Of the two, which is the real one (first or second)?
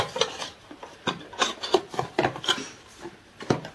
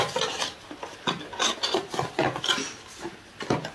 second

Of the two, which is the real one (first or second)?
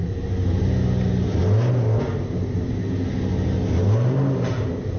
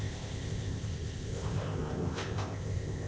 first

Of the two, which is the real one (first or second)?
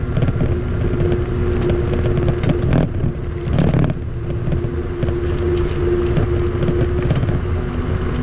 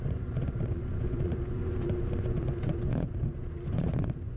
first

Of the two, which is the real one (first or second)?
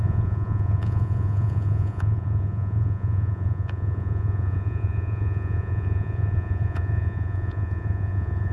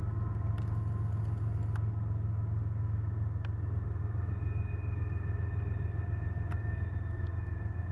second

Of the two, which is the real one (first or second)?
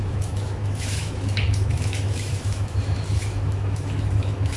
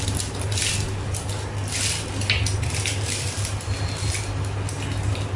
second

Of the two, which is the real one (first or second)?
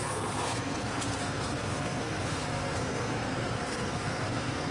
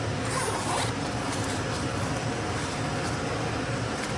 second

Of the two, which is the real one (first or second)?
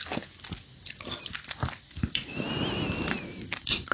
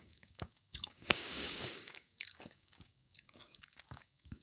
first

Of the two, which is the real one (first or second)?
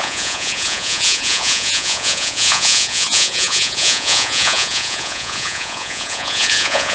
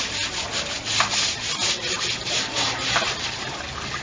second